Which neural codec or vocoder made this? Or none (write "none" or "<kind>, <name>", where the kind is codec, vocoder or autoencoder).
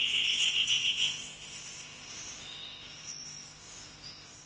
none